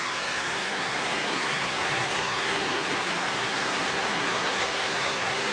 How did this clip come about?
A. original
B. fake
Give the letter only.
B